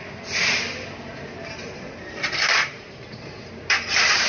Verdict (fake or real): fake